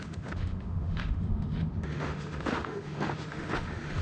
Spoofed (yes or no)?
yes